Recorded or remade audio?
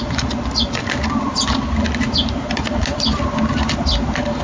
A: recorded